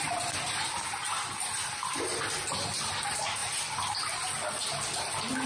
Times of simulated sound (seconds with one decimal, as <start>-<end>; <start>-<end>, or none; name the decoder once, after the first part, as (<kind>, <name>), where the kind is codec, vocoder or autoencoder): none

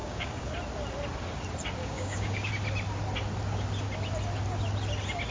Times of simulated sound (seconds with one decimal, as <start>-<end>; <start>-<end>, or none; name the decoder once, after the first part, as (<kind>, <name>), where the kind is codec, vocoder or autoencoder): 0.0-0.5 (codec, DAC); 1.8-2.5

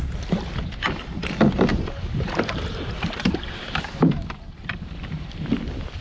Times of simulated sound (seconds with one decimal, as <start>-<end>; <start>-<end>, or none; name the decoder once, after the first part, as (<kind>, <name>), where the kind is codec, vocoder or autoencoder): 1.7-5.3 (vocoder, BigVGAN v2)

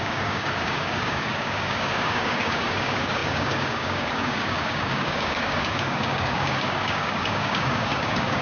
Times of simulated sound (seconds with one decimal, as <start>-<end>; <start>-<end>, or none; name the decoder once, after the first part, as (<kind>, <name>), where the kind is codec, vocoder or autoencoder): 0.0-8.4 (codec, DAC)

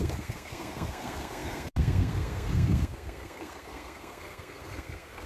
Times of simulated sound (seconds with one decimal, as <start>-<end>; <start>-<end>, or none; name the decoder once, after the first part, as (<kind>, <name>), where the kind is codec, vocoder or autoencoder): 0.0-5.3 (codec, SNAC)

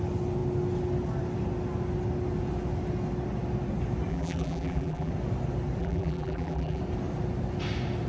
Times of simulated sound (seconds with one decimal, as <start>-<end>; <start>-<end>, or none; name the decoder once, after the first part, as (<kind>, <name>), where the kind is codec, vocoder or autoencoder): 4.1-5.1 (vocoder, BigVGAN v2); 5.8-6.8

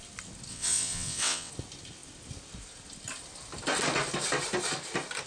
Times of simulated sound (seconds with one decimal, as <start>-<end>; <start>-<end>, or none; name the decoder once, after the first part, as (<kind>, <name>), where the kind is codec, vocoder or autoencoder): 0.5-1.5 (vocoder, WaveNeXt)

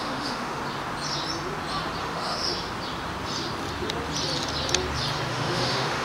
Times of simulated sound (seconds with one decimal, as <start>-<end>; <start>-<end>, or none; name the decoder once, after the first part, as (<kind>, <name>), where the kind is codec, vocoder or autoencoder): 0.0-0.6 (autoencoder, DAC-VAE); 2.0-2.5; 5.3-6.0